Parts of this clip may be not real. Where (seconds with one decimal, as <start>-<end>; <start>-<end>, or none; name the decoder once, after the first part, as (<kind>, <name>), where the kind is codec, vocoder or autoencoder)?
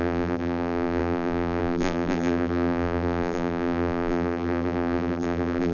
0.0-5.7 (vocoder, BigVGAN v2)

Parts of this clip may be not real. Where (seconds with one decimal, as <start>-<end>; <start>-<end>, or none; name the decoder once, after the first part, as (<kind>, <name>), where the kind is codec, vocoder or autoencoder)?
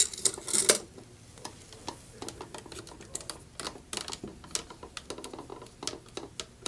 none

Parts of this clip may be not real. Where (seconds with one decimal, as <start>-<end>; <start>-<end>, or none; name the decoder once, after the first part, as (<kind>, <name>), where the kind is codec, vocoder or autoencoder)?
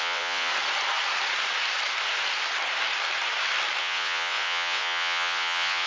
0.0-0.5 (vocoder, WaveNeXt); 3.8-5.9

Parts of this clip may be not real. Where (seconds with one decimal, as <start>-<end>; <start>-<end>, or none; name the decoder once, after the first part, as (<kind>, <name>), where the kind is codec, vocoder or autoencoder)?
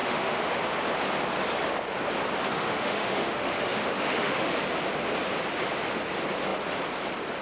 0.0-0.6 (autoencoder, DAC-VAE); 2.5-4.5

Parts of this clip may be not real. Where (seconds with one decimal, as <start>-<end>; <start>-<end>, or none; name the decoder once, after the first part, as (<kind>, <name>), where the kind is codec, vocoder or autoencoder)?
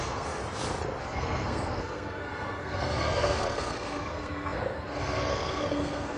0.0-0.4 (codec, SNAC); 1.0-6.2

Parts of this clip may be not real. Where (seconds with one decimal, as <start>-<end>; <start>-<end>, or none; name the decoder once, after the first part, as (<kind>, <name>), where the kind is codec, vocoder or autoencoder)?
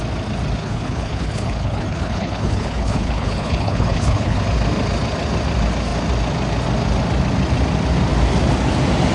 0.6-4.4 (codec, HILCodec)